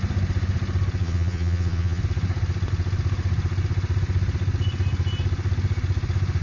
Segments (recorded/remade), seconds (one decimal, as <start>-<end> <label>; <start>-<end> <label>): 0.0-1.0 recorded; 1.0-2.0 remade; 2.0-6.4 recorded